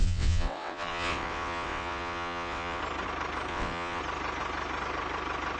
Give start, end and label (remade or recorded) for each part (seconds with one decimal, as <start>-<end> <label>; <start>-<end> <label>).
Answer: 0.0-2.8 remade; 2.8-3.5 recorded; 3.5-4.0 remade; 4.0-5.6 recorded